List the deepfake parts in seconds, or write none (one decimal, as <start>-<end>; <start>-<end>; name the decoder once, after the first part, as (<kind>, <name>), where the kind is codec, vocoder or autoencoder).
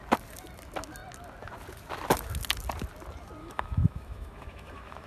3.4-5.1 (autoencoder, DAC-VAE)